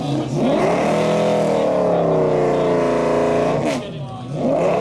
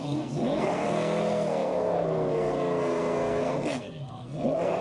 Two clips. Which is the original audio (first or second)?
first